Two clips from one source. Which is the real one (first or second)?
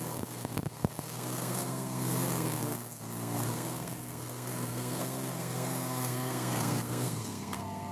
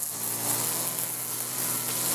second